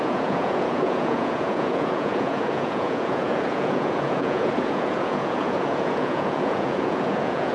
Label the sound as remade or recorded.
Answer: remade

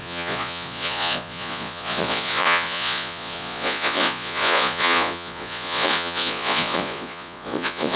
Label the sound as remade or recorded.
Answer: remade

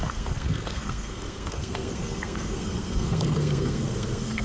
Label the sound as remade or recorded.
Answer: remade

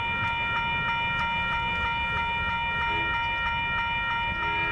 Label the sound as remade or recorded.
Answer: recorded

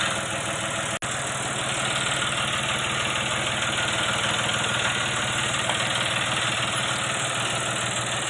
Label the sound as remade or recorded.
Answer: recorded